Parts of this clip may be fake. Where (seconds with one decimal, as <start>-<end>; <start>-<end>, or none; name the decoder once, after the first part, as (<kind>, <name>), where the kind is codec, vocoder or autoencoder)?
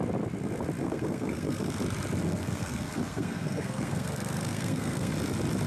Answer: 0.8-1.6 (codec, SNAC); 2.2-5.1